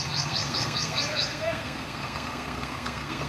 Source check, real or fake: fake